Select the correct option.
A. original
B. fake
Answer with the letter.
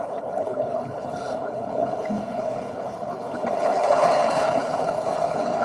B